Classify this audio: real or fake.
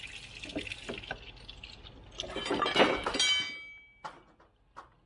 real